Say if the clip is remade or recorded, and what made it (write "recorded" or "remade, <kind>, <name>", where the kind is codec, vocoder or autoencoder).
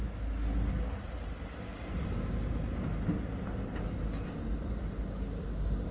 recorded